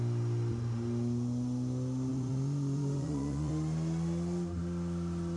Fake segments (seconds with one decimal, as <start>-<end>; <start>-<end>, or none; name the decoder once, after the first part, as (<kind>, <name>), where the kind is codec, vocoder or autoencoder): 2.1-3.5 (vocoder, Vocos)